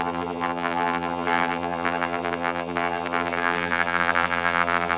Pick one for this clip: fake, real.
fake